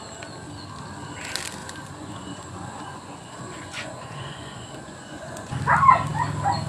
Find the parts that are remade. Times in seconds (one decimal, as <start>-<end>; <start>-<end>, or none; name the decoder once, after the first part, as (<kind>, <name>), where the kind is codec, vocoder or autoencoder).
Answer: 1.6-5.6 (vocoder, Vocos)

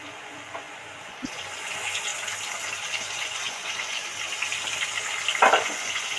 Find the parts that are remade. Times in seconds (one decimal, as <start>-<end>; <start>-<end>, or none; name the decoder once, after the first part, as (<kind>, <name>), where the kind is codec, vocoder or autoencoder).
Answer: 0.0-2.1 (vocoder, Vocos); 3.0-4.0; 5.6-6.2